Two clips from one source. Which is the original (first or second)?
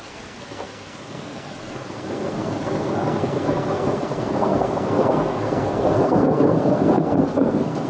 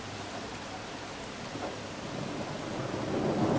second